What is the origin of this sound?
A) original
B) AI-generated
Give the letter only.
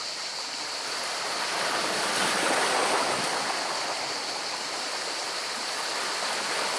A